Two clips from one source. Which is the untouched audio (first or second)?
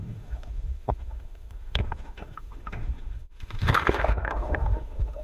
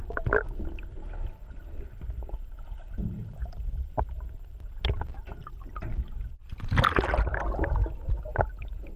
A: second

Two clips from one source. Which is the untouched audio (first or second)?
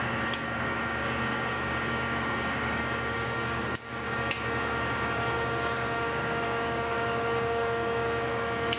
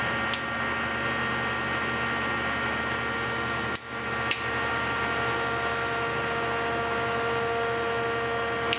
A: second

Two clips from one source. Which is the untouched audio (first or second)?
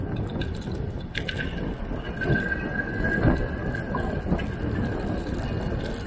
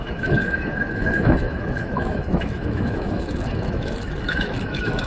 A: first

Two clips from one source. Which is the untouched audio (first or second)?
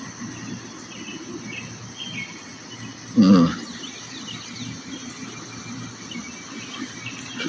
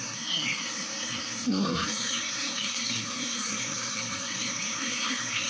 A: first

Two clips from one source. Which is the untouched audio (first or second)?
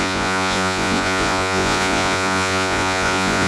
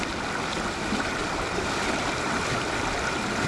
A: second